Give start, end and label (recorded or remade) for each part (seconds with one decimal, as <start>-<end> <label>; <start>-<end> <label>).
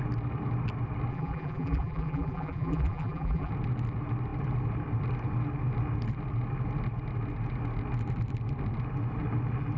0.0-1.1 recorded; 1.1-3.5 remade; 3.5-9.8 recorded